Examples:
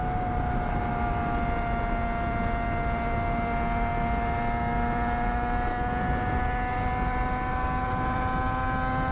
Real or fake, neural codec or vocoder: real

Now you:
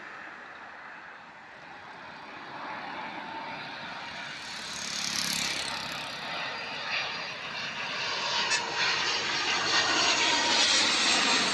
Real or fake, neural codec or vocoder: real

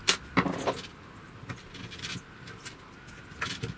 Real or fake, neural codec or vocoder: real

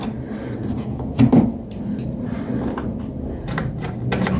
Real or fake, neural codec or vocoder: real